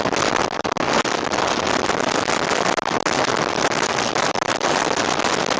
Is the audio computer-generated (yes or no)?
no